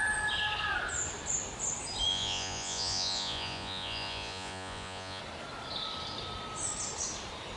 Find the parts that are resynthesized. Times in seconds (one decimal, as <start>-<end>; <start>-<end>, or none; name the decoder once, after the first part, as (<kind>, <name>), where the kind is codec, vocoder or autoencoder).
2.1-5.2 (vocoder, Vocos)